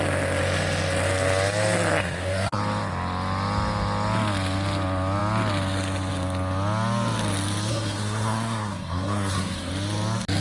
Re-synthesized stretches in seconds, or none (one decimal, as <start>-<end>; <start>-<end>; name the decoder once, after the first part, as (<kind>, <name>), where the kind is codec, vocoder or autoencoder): 2.0-2.6 (codec, SNAC); 7.7-9.7